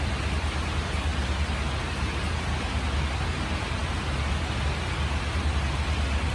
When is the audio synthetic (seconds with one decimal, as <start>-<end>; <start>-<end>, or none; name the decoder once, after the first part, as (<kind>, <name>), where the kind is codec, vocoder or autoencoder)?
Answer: none